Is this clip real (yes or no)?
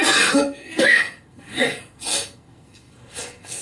no